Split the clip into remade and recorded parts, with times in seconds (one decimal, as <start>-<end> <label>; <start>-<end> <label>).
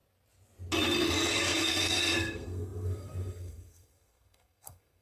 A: 0.0-1.3 recorded; 1.3-5.0 remade